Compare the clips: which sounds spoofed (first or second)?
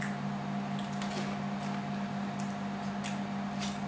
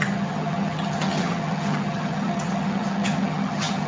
second